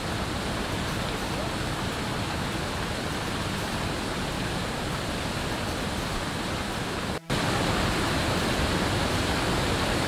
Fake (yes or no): no